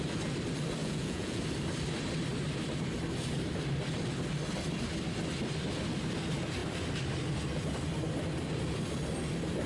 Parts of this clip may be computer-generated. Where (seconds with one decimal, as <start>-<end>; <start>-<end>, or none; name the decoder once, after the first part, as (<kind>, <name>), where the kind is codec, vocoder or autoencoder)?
0.8-1.4 (vocoder, Vocos)